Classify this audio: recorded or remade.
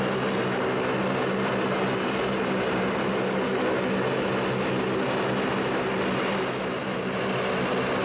recorded